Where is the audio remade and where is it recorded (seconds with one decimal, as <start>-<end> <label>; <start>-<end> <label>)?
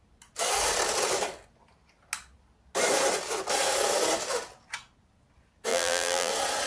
0.0-5.7 recorded; 5.7-6.3 remade; 6.3-6.7 recorded